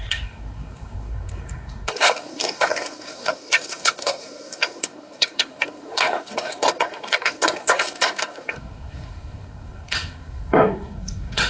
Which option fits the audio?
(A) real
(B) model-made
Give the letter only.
B